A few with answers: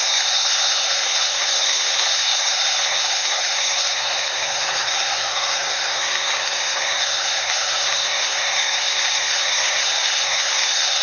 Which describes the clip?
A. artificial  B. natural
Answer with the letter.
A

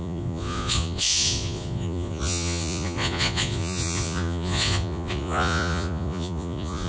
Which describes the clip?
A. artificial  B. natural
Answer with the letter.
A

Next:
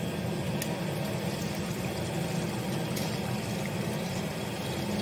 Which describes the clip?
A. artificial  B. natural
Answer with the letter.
B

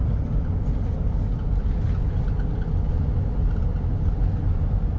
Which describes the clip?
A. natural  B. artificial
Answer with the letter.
A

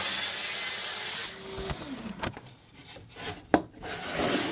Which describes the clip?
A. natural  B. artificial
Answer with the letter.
A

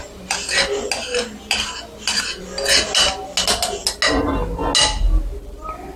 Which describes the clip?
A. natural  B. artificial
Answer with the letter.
A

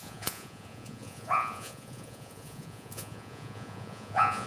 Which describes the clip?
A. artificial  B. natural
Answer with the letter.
A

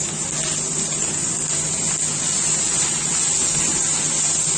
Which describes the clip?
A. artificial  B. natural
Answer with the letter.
B